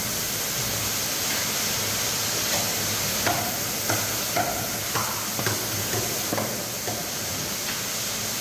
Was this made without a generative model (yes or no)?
yes